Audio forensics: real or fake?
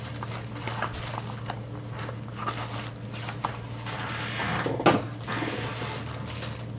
real